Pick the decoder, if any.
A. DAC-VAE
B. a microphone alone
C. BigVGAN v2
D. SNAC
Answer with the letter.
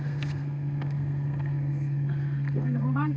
D